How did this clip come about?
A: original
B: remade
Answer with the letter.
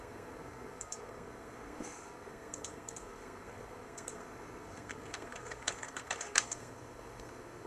B